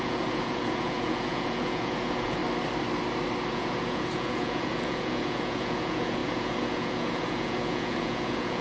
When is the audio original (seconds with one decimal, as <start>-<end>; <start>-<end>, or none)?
2.4-3.5